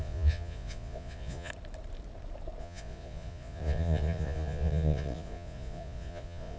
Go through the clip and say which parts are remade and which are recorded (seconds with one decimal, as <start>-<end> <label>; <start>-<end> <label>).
0.0-1.5 remade; 1.5-2.6 recorded; 2.6-6.6 remade